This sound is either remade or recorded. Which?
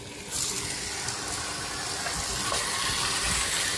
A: recorded